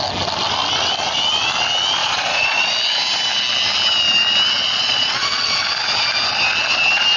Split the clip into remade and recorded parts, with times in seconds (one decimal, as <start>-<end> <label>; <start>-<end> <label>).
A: 0.0-2.0 recorded; 2.0-2.7 remade; 2.7-4.6 recorded; 4.6-5.6 remade; 5.6-7.2 recorded